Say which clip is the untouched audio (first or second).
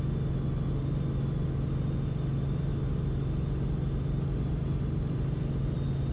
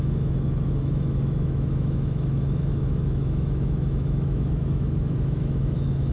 first